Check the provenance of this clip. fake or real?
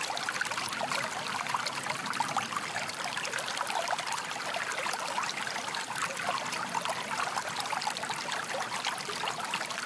real